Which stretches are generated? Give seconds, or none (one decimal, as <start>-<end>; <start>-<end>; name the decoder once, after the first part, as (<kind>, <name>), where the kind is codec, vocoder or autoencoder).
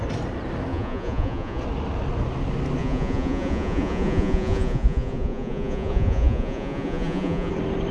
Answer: 0.7-1.6 (vocoder, Vocos); 2.8-7.5